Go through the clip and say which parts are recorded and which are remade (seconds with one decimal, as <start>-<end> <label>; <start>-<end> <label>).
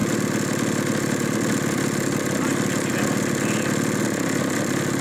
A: 0.0-5.0 recorded